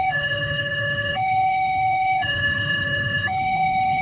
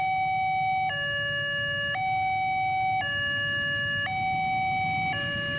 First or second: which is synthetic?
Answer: first